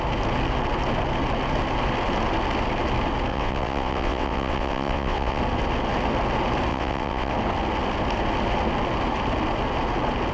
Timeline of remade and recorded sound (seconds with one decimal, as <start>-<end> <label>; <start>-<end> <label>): 0.0-3.3 recorded; 3.3-5.4 remade; 5.4-6.7 recorded; 6.7-7.3 remade; 7.3-10.3 recorded